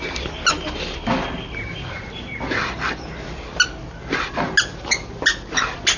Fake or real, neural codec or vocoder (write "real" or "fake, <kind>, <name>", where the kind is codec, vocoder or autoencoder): real